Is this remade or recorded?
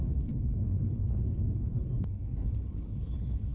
remade